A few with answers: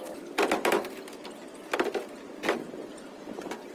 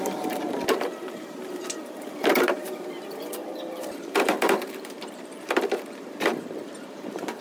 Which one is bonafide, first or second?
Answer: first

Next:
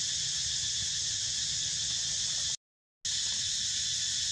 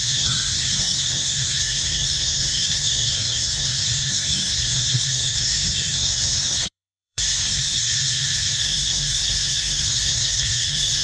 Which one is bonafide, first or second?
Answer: first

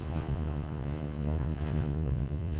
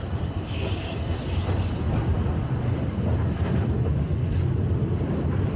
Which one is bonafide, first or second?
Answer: second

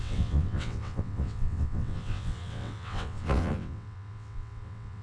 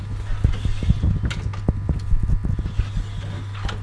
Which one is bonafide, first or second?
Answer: second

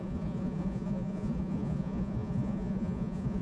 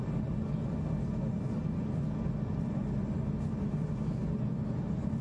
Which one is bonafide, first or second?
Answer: second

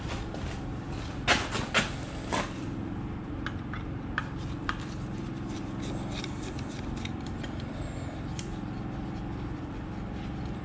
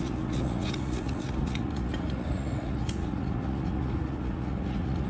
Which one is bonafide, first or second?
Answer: first